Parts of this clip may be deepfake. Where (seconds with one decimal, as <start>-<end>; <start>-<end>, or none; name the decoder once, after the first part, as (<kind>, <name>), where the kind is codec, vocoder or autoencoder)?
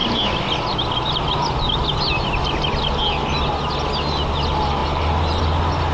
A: 4.8-5.4 (vocoder, BigVGAN v2)